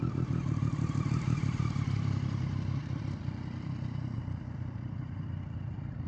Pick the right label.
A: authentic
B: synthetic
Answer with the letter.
B